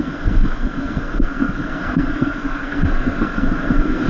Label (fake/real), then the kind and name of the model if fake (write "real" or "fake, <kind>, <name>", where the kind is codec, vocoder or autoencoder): fake, codec, SNAC